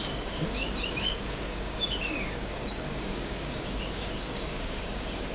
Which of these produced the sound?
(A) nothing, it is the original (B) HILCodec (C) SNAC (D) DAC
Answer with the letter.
D